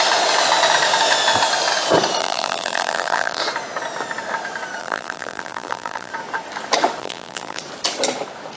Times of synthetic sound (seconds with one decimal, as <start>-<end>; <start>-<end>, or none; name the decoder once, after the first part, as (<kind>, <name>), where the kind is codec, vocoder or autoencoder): 2.2-3.4 (vocoder, BigVGAN v2); 4.8-6.1; 7.0-7.6